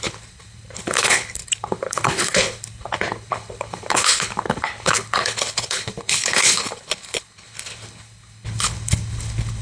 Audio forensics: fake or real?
fake